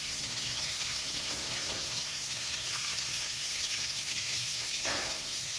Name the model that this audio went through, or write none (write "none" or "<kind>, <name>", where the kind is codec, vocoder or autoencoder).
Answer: codec, SNAC